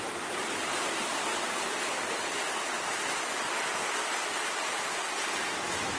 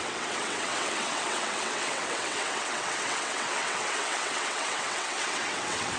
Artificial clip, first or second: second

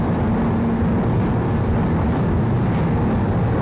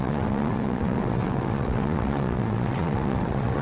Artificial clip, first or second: second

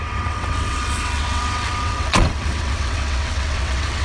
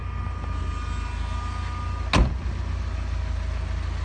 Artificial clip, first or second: first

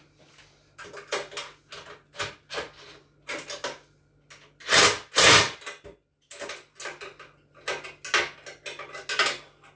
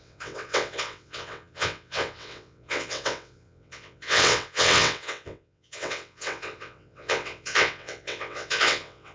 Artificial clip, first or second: second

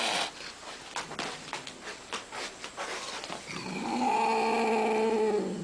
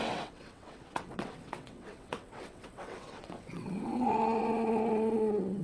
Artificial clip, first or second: second